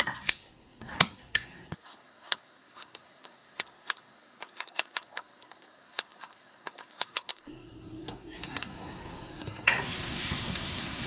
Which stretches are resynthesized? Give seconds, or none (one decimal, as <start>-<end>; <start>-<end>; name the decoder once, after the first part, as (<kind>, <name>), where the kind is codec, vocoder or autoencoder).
0.0-11.1 (codec, SNAC)